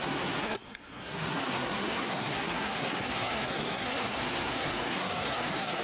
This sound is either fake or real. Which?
fake